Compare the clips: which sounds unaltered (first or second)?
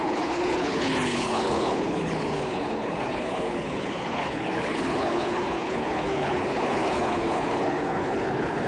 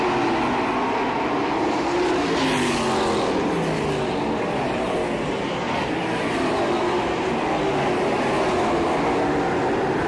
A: second